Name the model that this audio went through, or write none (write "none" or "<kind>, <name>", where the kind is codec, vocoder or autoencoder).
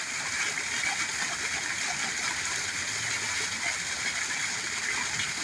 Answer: none